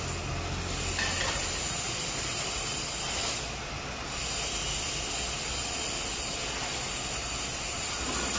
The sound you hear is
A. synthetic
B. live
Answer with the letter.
B